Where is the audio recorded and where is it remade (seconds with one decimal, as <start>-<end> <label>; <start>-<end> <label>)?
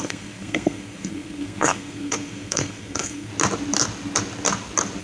0.0-3.3 remade; 3.3-5.0 recorded